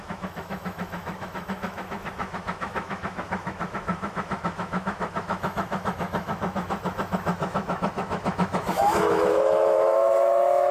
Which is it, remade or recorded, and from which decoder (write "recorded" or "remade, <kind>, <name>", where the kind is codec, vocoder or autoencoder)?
remade, autoencoder, DAC-VAE